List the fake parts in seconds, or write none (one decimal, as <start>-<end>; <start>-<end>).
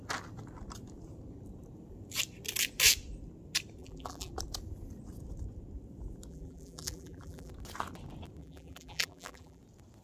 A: 3.8-4.3; 6.3-7.5; 8.4-9.6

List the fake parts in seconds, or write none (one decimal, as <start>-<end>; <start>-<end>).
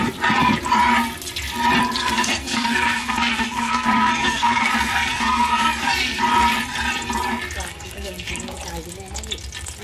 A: 2.0-6.2; 7.7-8.3